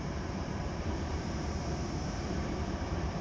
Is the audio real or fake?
fake